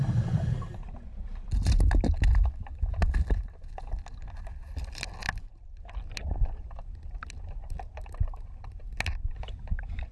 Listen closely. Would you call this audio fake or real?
real